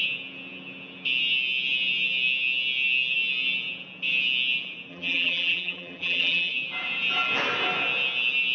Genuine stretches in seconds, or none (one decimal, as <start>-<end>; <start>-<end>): 0.0-4.9; 6.5-8.5